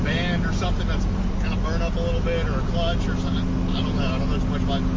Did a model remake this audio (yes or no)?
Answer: no